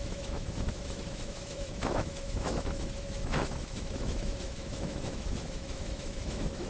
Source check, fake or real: fake